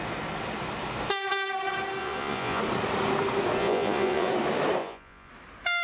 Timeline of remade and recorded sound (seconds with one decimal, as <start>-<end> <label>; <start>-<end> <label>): 0.0-2.0 recorded; 2.0-2.6 remade; 2.6-3.6 recorded; 3.6-4.3 remade; 4.3-4.8 recorded; 4.8-5.3 remade; 5.3-5.8 recorded

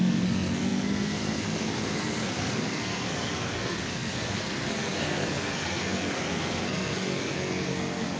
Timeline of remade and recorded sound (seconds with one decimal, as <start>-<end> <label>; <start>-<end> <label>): 0.0-8.2 remade

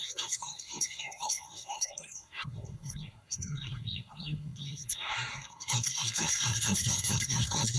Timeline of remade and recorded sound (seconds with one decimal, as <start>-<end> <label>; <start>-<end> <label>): 0.0-7.8 remade

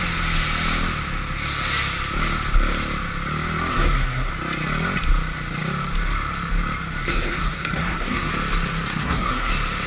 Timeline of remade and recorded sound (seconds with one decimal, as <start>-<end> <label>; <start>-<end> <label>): 0.0-3.7 recorded; 3.7-4.3 remade; 4.3-7.0 recorded; 7.0-8.3 remade; 8.3-8.9 recorded; 8.9-9.5 remade; 9.5-9.9 recorded